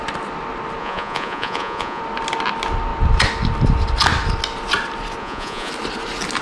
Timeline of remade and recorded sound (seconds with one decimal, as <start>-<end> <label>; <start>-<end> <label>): 0.0-0.8 recorded; 0.8-2.0 remade; 2.0-5.2 recorded; 5.2-5.7 remade; 5.7-6.4 recorded